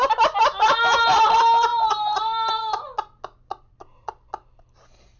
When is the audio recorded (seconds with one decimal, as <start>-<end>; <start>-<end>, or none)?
0.0-5.2